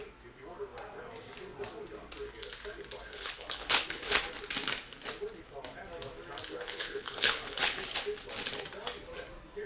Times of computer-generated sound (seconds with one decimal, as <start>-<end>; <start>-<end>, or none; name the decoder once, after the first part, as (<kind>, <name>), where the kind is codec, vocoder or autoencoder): 3.1-4.2 (codec, HILCodec); 6.5-8.0